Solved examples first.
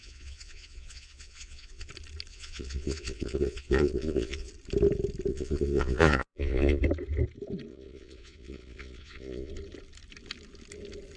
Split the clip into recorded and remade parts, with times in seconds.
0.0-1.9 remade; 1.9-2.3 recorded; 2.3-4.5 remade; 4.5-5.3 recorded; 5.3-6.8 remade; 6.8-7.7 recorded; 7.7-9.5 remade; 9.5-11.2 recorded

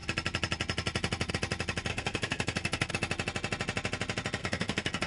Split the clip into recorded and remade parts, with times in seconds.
0.0-1.9 recorded; 1.9-2.9 remade; 2.9-4.4 recorded; 4.4-5.1 remade

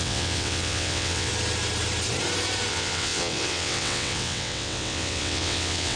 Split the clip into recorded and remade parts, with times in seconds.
0.0-1.3 remade; 1.3-2.7 recorded; 2.7-6.0 remade

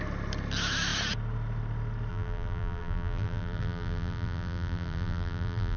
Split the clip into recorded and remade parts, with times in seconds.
0.0-2.1 recorded; 2.1-5.8 remade

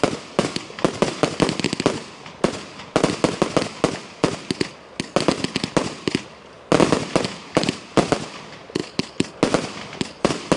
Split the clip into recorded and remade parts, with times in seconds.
0.0-10.6 recorded

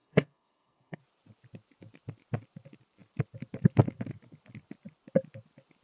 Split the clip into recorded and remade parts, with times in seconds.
0.0-1.0 remade; 1.0-5.8 recorded